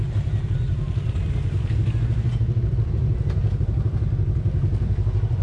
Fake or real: real